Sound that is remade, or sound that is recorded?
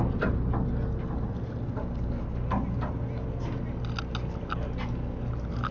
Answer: recorded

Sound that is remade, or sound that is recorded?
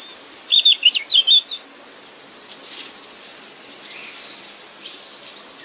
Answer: recorded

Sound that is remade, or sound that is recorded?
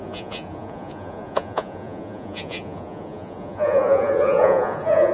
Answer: remade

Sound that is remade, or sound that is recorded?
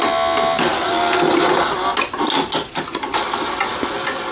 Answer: recorded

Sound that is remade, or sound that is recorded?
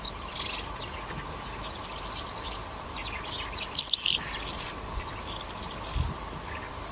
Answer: recorded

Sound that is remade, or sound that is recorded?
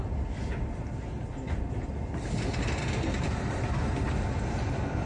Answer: recorded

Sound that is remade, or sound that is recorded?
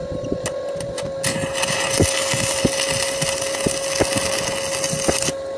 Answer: recorded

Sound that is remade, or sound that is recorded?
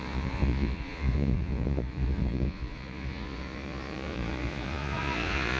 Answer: remade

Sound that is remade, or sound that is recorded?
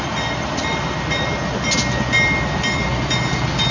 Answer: recorded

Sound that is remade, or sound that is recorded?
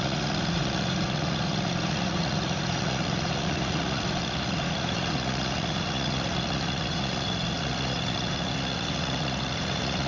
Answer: remade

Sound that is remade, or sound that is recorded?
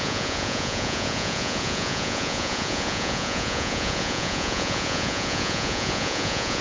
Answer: remade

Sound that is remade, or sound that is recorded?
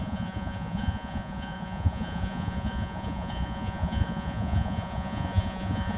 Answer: remade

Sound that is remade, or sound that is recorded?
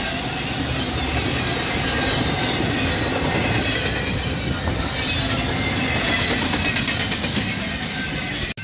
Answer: recorded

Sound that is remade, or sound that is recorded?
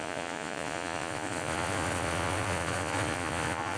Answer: remade